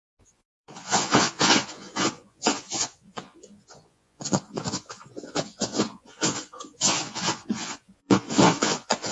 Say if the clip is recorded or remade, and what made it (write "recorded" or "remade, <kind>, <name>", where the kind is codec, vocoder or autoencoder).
remade, vocoder, Vocos